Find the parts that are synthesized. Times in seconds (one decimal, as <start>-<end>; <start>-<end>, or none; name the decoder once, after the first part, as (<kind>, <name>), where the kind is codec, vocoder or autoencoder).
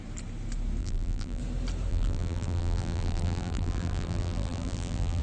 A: 0.8-1.4 (vocoder, BigVGAN v2); 1.9-5.2